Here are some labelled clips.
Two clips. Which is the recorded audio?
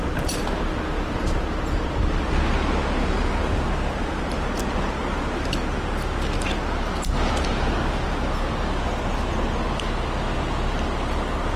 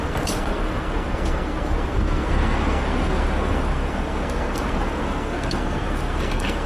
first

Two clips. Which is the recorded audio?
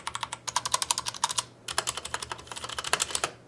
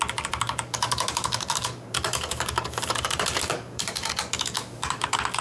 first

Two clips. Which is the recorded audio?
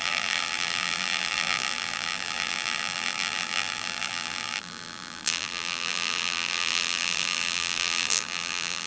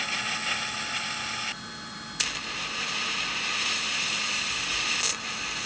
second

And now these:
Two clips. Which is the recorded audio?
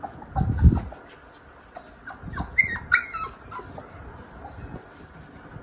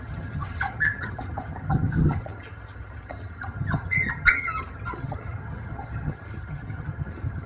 first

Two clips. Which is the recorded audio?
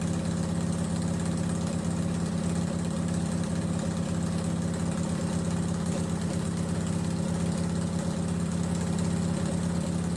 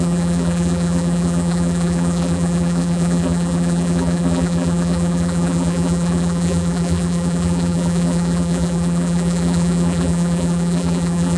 first